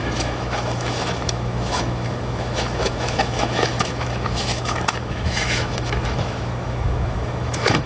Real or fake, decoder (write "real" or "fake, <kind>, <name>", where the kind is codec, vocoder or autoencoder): fake, autoencoder, DAC-VAE